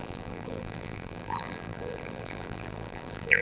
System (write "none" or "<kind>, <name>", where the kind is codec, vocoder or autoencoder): vocoder, BigVGAN v2